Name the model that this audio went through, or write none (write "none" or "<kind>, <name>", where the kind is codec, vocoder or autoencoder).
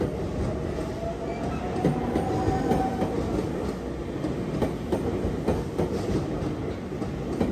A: none